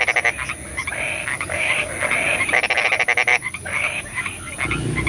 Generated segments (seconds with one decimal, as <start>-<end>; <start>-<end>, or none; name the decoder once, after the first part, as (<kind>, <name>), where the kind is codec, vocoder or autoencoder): 1.3-1.9 (codec, DAC); 3.3-4.5